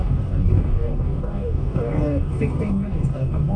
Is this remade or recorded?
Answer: remade